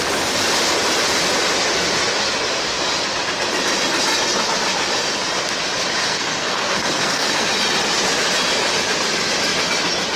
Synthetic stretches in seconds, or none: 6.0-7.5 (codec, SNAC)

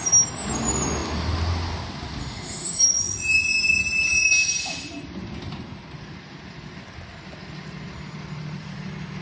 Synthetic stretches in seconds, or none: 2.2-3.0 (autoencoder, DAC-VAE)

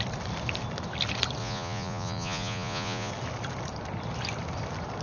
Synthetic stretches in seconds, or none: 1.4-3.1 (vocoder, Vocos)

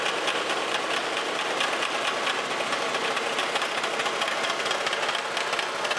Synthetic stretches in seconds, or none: 1.0-2.5 (vocoder, BigVGAN v2)

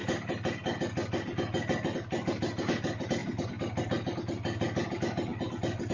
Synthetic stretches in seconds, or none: none